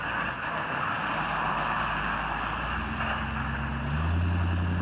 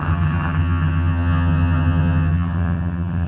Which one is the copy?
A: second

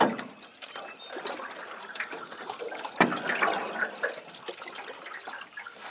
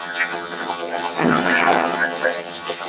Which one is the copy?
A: second